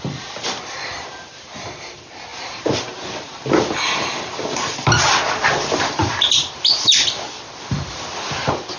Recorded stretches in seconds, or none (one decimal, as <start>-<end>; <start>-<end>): 0.0-8.8